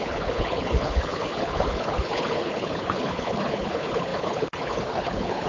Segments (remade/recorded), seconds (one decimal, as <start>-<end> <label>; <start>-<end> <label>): 0.0-5.5 remade